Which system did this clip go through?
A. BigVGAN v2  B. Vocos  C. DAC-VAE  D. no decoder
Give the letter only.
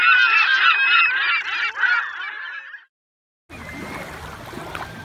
D